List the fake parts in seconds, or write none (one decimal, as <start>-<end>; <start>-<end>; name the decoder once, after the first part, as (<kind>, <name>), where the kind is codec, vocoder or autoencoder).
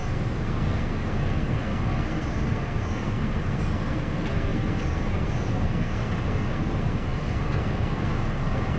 0.0-8.8 (codec, SNAC)